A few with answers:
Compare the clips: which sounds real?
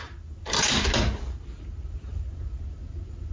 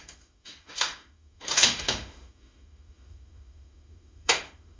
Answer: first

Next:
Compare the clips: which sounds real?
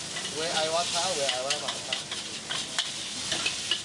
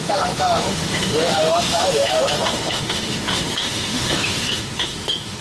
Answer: first